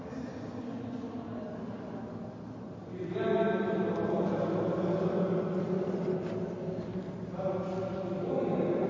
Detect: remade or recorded recorded